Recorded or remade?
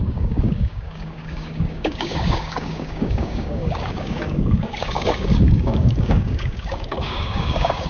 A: remade